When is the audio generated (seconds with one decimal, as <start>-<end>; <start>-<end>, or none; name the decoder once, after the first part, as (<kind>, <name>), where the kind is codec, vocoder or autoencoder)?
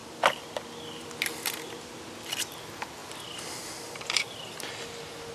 0.0-0.5 (vocoder, BigVGAN v2); 3.0-5.3